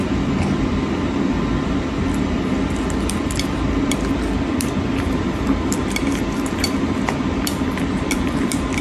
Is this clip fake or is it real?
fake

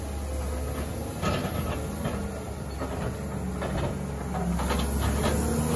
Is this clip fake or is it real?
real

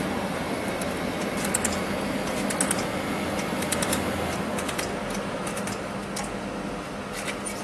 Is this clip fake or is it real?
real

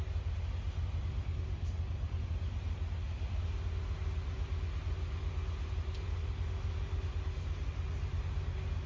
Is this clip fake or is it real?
real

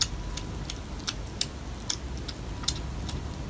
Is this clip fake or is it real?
real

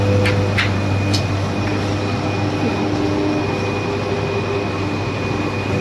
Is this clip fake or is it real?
real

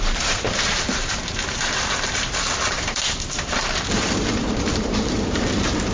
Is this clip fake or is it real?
fake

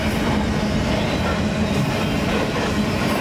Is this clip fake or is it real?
real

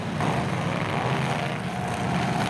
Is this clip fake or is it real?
real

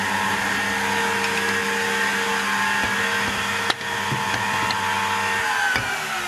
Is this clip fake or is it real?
real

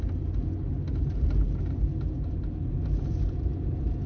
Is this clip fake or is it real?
real